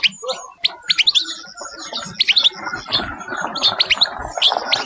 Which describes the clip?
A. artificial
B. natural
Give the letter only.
B